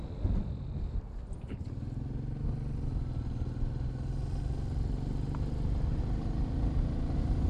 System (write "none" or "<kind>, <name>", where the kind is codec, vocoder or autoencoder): none